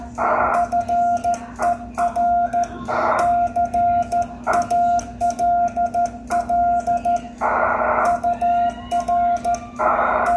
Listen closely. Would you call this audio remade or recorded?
recorded